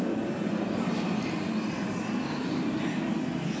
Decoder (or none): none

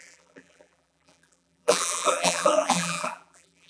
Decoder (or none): vocoder, BigVGAN v2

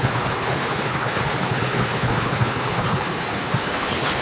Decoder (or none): codec, HILCodec